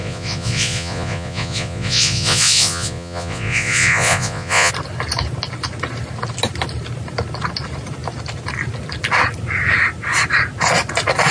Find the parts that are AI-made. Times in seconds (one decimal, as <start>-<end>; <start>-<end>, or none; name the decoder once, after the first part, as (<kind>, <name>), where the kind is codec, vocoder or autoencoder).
0.0-4.7 (vocoder, Vocos)